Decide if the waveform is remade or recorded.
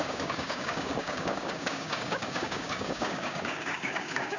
remade